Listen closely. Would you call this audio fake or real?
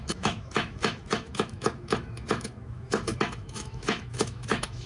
fake